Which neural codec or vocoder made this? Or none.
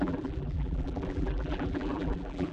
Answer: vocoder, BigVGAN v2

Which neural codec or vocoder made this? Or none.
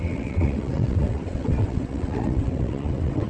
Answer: vocoder, WaveNeXt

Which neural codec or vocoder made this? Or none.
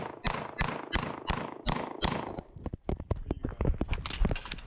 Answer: none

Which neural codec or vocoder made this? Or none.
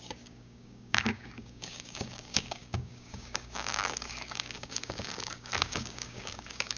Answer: codec, DAC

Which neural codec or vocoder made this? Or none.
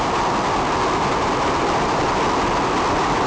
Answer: none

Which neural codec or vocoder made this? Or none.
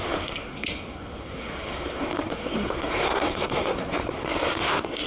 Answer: codec, SNAC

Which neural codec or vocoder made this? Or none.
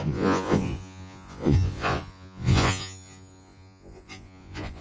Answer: vocoder, Vocos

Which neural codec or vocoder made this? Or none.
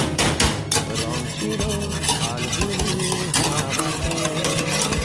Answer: none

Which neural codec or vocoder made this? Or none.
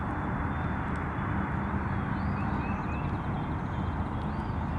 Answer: none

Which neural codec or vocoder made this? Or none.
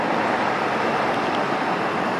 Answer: none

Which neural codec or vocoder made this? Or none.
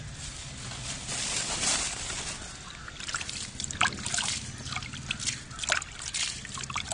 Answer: none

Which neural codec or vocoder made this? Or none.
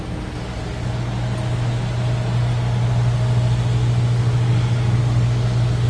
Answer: none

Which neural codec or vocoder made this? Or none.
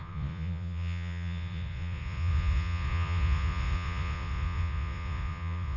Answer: vocoder, Vocos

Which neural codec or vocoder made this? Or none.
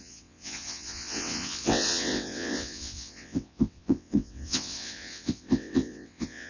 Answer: vocoder, WaveNeXt